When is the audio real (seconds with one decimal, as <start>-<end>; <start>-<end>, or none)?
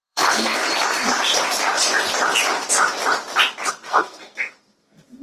0.6-3.7